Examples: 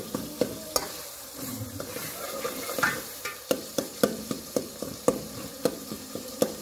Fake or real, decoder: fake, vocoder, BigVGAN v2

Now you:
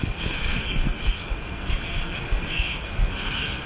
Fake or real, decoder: fake, codec, SNAC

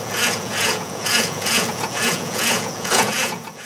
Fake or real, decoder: fake, vocoder, Vocos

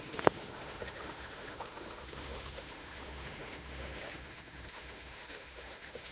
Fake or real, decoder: fake, autoencoder, DAC-VAE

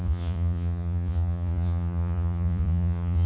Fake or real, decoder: fake, vocoder, Vocos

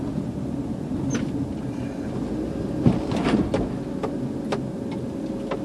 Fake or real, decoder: real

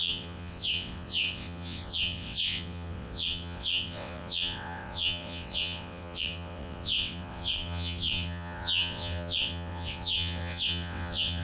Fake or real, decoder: fake, vocoder, WaveNeXt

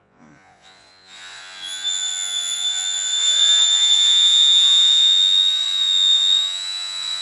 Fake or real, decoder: fake, vocoder, Vocos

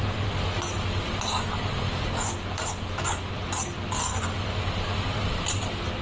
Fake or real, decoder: real